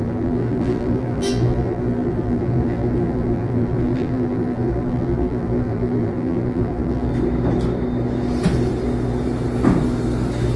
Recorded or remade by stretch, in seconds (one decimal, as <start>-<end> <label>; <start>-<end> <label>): 0.0-7.1 remade; 7.1-10.6 recorded